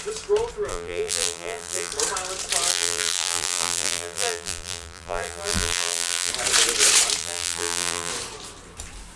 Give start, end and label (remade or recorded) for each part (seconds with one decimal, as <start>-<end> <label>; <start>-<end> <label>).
0.0-0.7 recorded; 0.7-1.9 remade; 1.9-2.7 recorded; 2.7-6.3 remade; 6.3-7.2 recorded; 7.2-8.1 remade; 8.1-9.2 recorded